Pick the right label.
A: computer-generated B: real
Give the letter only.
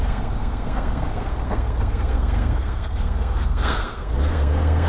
A